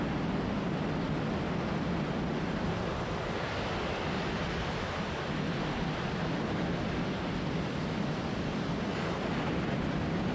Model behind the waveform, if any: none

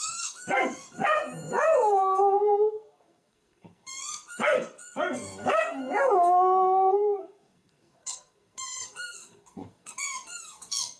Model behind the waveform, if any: codec, SNAC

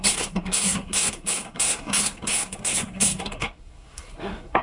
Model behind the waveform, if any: codec, SNAC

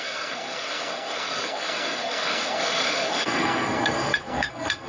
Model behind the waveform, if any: codec, SNAC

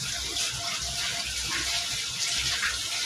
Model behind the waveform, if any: none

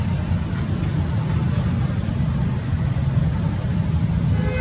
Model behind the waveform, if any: none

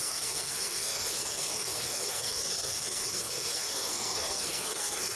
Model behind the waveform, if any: codec, SNAC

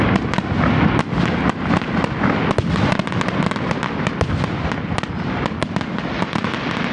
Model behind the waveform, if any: none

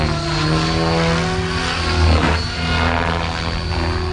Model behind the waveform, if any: none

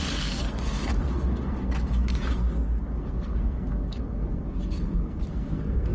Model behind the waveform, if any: codec, SNAC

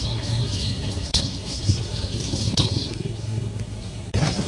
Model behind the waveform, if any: codec, SNAC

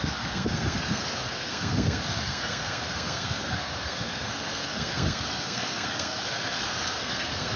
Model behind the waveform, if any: codec, SNAC